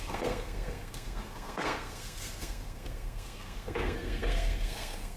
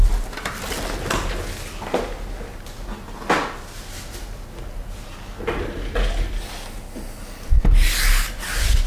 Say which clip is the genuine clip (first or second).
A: second